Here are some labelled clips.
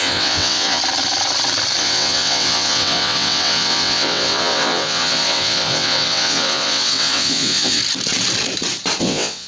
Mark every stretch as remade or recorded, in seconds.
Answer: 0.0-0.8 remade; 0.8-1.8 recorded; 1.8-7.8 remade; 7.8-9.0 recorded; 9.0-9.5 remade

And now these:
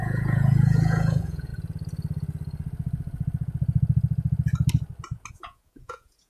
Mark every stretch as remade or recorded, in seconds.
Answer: 0.0-1.5 remade; 1.5-5.3 recorded; 5.3-6.3 remade

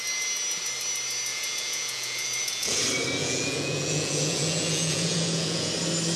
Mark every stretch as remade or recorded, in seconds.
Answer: 0.0-1.3 recorded; 1.3-2.8 remade; 2.8-3.2 recorded; 3.2-5.7 remade; 5.7-6.2 recorded

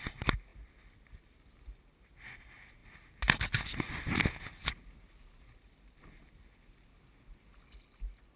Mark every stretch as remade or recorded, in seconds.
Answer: 0.0-8.4 recorded

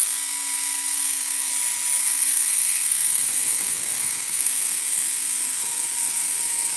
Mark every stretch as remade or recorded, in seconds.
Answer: 0.0-1.5 remade; 1.5-2.0 recorded; 2.0-6.8 remade

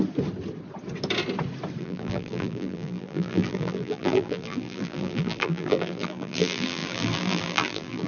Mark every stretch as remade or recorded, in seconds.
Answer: 0.0-1.8 recorded; 1.8-8.1 remade